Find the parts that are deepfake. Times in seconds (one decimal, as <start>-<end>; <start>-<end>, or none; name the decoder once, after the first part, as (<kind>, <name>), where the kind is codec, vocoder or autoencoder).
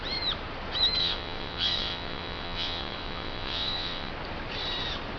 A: 1.0-4.1 (vocoder, WaveNeXt)